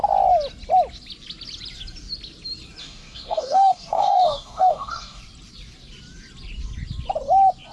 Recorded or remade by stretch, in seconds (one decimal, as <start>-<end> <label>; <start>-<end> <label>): 0.0-2.8 recorded; 2.8-5.2 remade; 5.2-7.7 recorded